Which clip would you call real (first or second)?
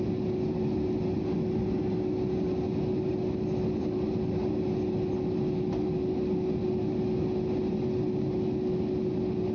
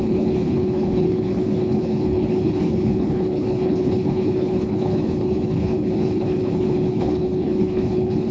first